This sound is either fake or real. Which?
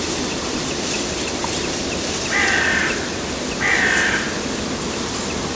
real